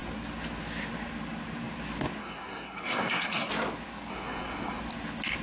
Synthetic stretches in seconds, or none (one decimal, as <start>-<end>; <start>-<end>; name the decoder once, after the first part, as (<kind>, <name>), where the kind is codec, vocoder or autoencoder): 2.2-3.5 (codec, SNAC); 4.1-4.8